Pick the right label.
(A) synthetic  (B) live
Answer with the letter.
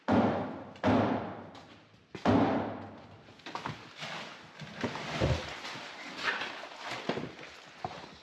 B